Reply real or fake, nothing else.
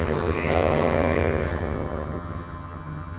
fake